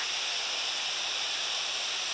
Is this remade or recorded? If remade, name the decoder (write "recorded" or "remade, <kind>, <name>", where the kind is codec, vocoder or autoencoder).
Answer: recorded